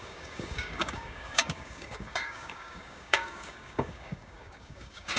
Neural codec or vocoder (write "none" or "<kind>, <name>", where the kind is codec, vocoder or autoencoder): codec, DAC